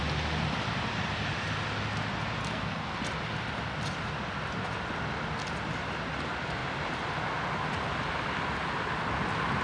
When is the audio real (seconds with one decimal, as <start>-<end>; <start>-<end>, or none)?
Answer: 0.0-2.4; 3.0-9.6